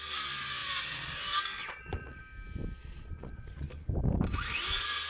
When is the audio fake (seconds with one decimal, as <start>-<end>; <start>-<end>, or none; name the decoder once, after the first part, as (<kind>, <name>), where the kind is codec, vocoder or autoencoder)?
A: 0.6-1.2 (vocoder, Vocos); 1.6-2.2; 2.8-3.9